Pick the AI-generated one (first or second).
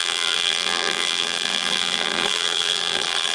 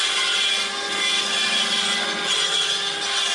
first